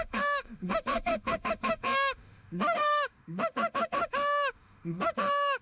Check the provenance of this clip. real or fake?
fake